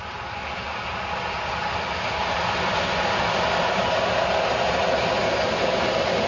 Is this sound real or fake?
real